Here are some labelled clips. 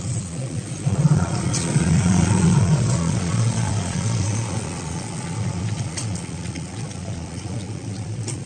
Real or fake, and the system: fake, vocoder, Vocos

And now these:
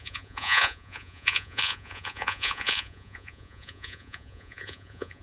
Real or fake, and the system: fake, vocoder, Vocos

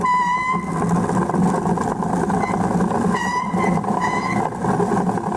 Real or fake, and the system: real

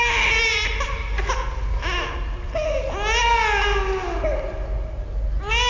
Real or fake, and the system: real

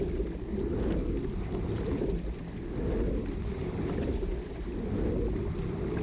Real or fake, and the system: real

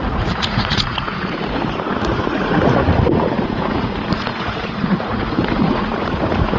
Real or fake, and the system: fake, vocoder, Vocos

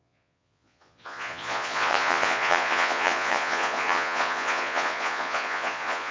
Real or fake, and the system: fake, vocoder, Vocos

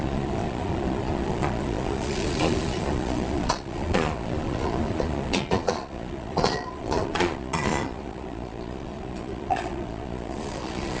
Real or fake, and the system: fake, vocoder, Vocos